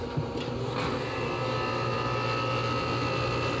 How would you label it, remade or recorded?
recorded